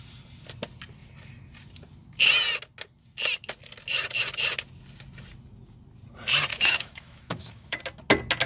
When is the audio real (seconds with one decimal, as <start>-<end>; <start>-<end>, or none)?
0.0-6.5; 7.8-8.5